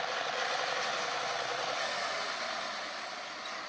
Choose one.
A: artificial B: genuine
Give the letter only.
B